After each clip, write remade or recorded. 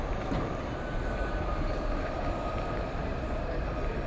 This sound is recorded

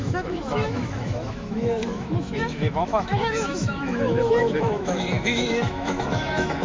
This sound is remade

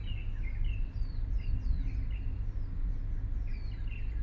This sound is recorded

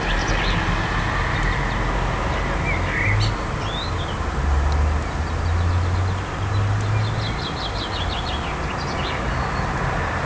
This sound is recorded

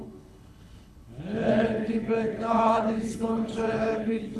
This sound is remade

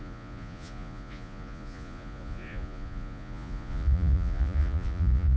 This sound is remade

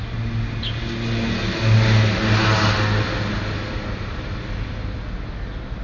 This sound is recorded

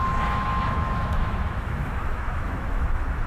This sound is remade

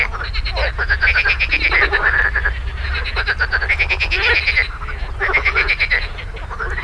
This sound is recorded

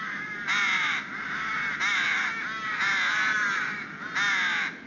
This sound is recorded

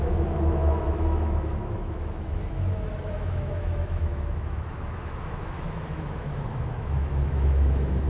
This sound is remade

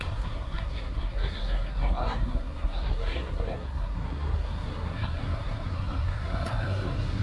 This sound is remade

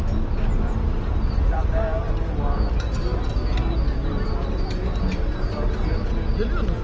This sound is recorded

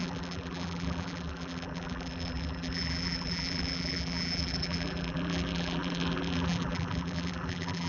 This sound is remade